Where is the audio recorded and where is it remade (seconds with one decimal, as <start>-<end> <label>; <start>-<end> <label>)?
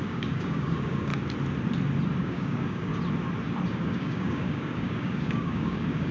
0.0-1.1 remade; 1.1-2.2 recorded; 2.2-2.9 remade; 2.9-3.8 recorded; 3.8-6.1 remade